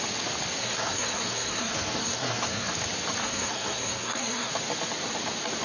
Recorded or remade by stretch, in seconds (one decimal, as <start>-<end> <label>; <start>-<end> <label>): 0.0-0.6 recorded; 0.6-2.7 remade; 2.7-3.2 recorded; 3.2-4.5 remade; 4.5-5.6 recorded